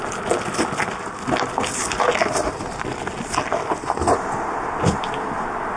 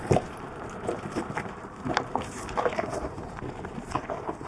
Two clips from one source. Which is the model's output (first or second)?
second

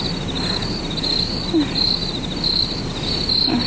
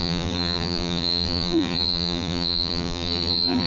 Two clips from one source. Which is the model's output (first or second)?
second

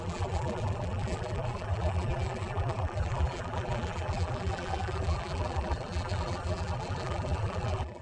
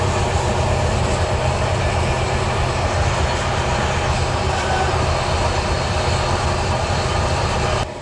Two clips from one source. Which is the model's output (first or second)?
first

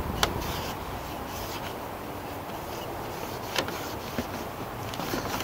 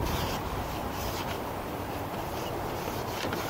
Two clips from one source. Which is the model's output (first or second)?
second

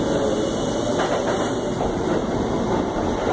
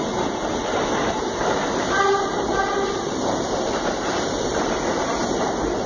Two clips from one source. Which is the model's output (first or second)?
second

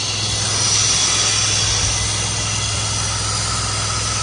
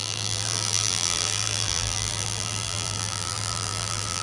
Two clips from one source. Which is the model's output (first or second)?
second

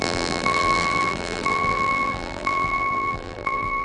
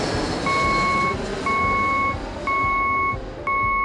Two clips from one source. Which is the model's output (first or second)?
first